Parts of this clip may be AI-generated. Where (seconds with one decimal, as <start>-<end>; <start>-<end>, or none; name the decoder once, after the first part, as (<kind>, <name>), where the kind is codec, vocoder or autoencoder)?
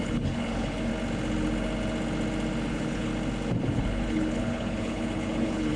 0.0-0.9 (codec, HILCodec); 2.7-3.1; 3.6-5.8